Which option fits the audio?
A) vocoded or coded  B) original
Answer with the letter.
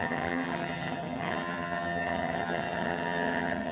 A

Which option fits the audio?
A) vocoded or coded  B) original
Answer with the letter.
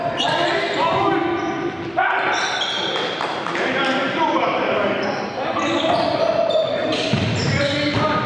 B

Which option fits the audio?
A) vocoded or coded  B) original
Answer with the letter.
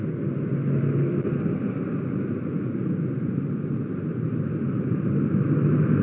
B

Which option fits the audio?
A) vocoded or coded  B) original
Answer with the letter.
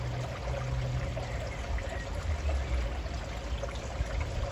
B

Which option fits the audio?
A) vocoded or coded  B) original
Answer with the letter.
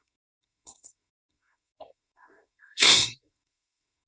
A